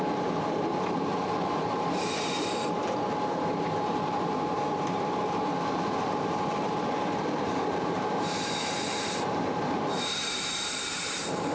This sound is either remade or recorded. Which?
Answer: remade